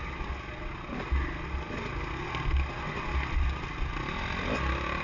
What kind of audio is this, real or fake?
real